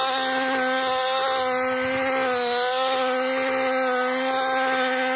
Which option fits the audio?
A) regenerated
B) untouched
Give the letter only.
B